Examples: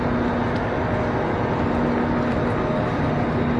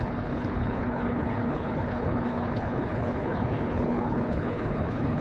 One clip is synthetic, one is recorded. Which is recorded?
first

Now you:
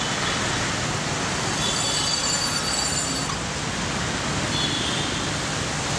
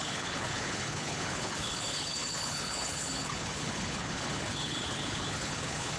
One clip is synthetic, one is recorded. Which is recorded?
first